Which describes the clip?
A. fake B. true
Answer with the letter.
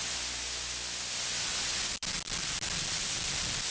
B